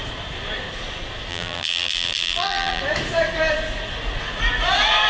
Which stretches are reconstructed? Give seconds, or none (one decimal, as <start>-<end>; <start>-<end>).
1.3-2.8